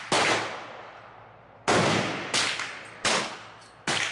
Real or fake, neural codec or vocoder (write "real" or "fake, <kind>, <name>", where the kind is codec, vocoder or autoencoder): real